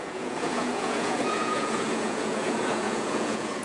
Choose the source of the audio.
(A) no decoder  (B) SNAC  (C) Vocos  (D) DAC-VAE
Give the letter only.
C